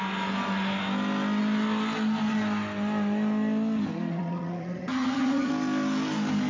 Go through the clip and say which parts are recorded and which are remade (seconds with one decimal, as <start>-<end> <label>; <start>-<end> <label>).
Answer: 0.0-4.1 recorded; 4.1-5.5 remade; 5.5-6.5 recorded